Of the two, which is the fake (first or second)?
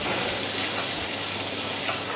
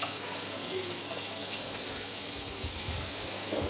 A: second